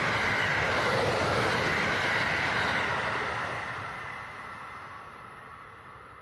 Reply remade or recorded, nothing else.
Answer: recorded